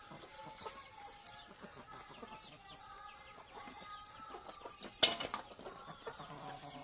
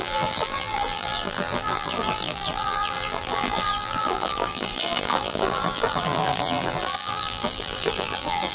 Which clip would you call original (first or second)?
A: first